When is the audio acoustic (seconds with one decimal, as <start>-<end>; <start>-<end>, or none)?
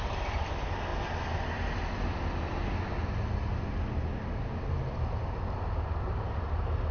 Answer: 0.0-6.9